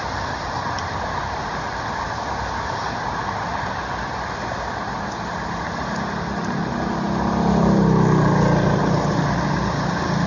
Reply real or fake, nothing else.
real